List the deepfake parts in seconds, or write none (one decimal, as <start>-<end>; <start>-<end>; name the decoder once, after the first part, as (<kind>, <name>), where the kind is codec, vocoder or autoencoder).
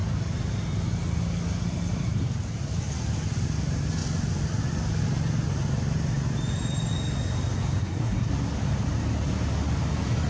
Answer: 7.8-8.3 (codec, SNAC)